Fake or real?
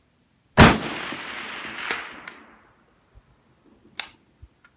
real